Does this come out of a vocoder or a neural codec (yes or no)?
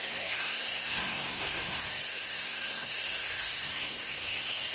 yes